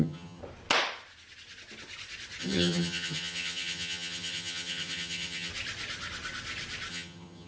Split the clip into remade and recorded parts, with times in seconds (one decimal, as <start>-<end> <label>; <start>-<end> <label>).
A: 0.0-0.4 remade; 0.4-2.4 recorded; 2.4-5.5 remade; 5.5-6.9 recorded; 6.9-7.5 remade